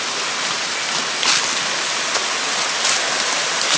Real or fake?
real